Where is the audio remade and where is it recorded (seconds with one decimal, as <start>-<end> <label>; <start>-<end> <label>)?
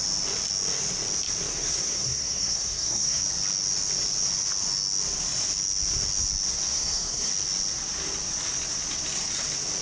0.0-1.5 recorded; 1.5-3.2 remade; 3.2-6.7 recorded; 6.7-7.3 remade; 7.3-9.8 recorded